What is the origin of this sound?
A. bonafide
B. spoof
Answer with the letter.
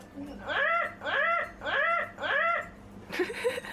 A